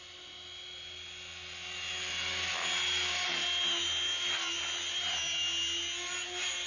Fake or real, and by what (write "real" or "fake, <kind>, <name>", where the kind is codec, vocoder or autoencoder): real